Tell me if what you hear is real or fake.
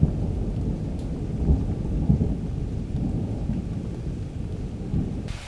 fake